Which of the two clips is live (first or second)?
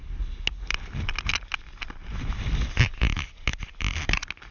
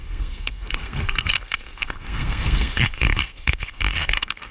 first